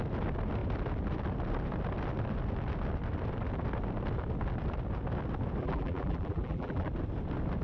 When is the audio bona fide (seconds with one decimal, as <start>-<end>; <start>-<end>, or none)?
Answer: 0.0-5.6; 6.9-7.6